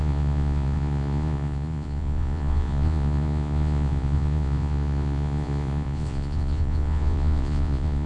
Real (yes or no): no